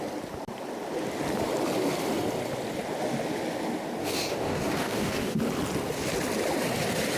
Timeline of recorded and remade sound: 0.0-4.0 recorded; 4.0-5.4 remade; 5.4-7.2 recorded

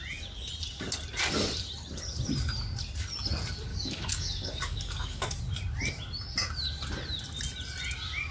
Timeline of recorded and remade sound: 0.0-3.7 recorded; 3.7-5.4 remade; 5.4-8.3 recorded

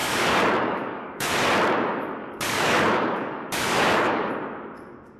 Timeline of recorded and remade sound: 0.0-1.3 remade; 1.3-2.2 recorded; 2.2-4.3 remade; 4.3-5.2 recorded

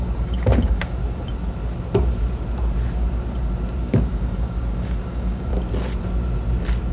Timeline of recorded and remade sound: 0.0-1.0 remade; 1.0-3.8 recorded; 3.8-5.5 remade; 5.5-6.9 recorded